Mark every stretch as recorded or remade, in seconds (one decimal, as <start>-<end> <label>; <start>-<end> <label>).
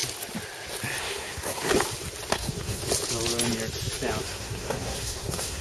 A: 0.0-1.0 recorded; 1.0-1.7 remade; 1.7-2.3 recorded; 2.3-2.8 remade; 2.8-4.2 recorded; 4.2-5.6 remade